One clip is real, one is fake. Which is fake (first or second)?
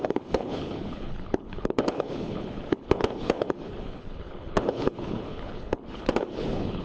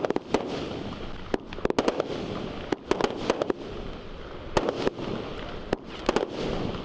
first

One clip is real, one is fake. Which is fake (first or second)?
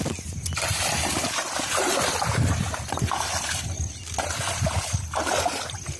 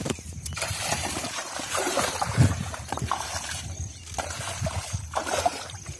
second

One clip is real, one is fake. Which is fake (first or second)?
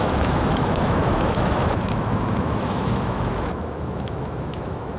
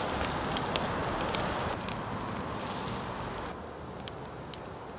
first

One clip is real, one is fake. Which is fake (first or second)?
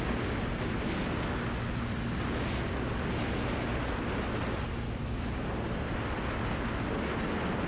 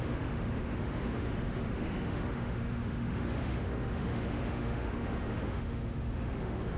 second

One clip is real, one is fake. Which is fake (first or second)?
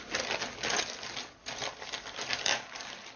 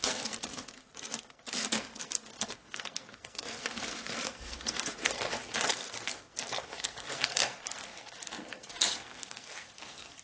second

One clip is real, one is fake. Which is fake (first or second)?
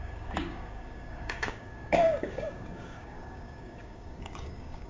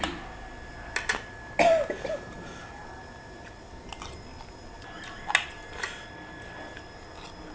first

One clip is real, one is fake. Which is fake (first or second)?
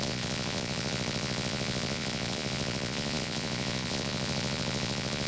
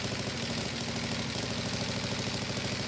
first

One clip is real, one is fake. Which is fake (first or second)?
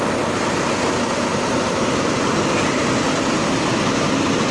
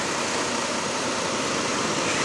second